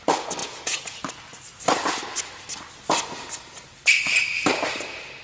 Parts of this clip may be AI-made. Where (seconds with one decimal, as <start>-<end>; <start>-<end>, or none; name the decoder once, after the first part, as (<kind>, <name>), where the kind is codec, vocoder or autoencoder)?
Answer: 0.4-1.0 (vocoder, Vocos)